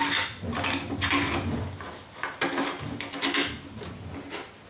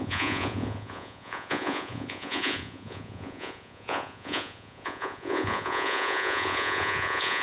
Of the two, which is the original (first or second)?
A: first